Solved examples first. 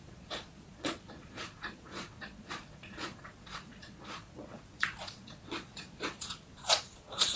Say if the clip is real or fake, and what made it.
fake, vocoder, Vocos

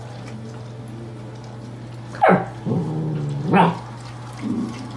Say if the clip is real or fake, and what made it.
real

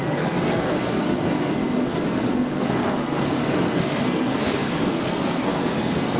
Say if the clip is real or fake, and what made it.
fake, codec, SNAC